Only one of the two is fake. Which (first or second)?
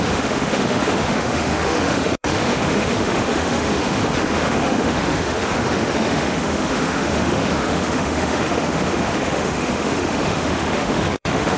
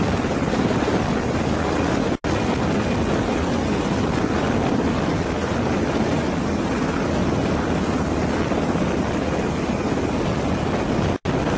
first